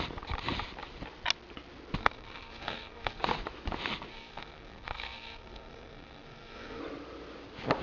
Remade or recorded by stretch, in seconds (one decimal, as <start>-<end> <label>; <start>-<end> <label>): 0.0-2.0 recorded; 2.0-3.2 remade; 3.2-4.1 recorded; 4.1-6.8 remade; 6.8-7.8 recorded